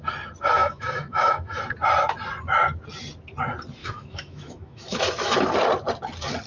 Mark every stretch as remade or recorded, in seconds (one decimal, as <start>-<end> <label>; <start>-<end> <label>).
0.0-0.6 recorded; 0.6-1.6 remade; 1.6-3.8 recorded; 3.8-5.5 remade; 5.5-6.5 recorded